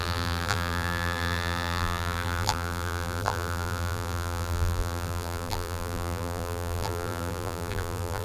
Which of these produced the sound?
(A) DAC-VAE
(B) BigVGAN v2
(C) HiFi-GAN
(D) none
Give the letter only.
B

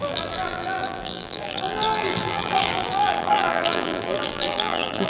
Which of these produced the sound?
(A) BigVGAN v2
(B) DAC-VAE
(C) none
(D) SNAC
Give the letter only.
A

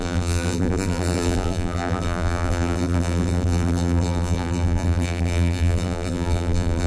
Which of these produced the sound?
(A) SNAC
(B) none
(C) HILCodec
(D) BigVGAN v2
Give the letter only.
D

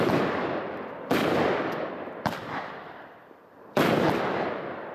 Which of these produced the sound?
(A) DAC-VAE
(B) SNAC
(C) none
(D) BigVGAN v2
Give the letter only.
D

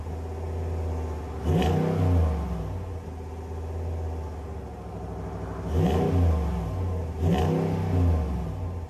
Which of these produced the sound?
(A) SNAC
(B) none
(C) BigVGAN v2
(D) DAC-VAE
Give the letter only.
B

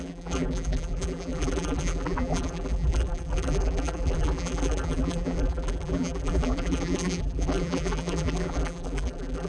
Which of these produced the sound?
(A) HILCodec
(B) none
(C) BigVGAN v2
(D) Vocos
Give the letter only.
C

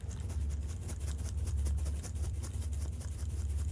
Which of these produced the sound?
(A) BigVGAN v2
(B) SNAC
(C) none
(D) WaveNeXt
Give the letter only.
A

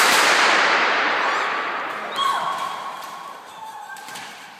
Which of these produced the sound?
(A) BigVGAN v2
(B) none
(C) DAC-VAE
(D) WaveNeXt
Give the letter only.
A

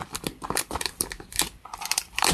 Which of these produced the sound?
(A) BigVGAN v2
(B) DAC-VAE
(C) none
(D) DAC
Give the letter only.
A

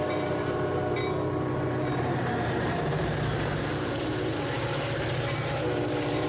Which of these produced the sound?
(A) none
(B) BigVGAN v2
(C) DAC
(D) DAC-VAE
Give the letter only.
B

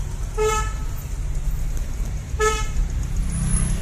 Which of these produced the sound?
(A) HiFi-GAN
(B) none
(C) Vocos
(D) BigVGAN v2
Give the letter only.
B